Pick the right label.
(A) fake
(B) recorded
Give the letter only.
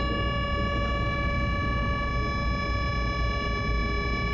B